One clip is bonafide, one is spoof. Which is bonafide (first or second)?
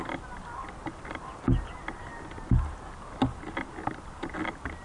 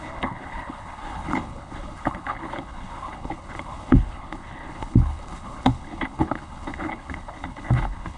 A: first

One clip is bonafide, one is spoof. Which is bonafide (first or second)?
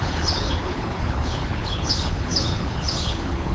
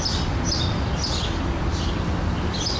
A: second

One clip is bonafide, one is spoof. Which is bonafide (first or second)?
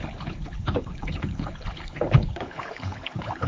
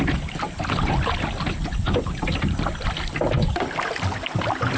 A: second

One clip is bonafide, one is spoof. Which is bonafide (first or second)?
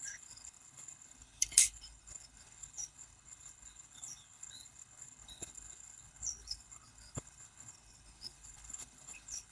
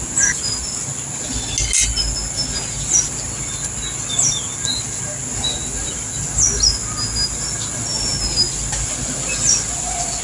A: second